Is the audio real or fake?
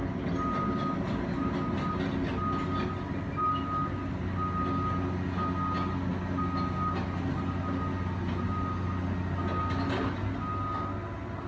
real